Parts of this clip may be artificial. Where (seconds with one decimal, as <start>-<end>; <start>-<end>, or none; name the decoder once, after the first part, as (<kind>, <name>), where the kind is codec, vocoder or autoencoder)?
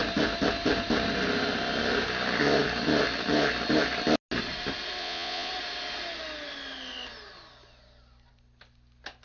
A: 5.0-5.5 (vocoder, Vocos)